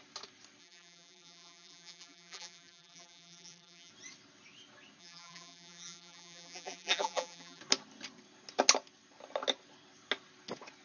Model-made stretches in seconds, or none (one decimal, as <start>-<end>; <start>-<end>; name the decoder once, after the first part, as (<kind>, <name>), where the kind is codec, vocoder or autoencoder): 0.6-3.9 (vocoder, BigVGAN v2); 5.0-7.6